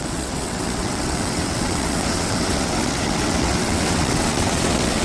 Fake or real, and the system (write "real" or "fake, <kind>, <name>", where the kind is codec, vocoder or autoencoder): fake, vocoder, WaveNeXt